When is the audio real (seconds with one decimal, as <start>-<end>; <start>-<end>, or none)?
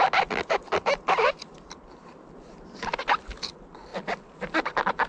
0.0-5.1